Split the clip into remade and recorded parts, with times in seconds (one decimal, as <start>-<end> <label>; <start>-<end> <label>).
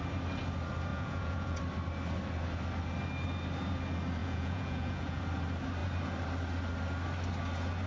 0.0-0.9 recorded; 0.9-1.6 remade; 1.6-4.2 recorded; 4.2-5.2 remade; 5.2-7.9 recorded